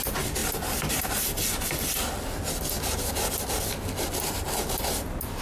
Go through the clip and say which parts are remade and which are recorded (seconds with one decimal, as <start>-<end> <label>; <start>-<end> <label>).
0.0-5.4 recorded